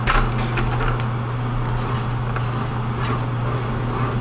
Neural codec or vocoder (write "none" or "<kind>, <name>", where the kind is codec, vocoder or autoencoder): none